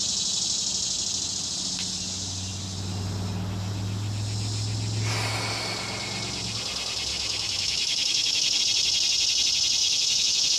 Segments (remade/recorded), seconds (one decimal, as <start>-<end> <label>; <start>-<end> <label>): 0.0-7.1 recorded; 7.1-8.6 remade; 8.6-9.8 recorded; 9.8-10.6 remade